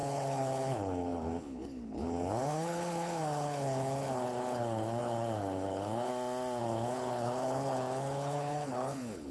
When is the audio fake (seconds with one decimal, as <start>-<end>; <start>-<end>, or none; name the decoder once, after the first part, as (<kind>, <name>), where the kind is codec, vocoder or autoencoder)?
0.0-6.1 (codec, HILCodec); 6.6-9.3